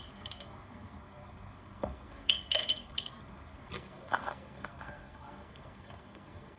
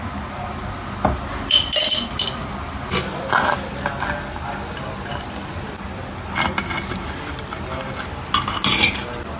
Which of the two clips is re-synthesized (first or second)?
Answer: first